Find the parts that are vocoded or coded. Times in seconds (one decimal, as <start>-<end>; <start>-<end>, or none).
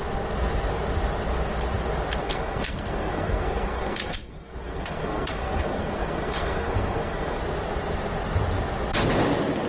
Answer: 2.2-7.4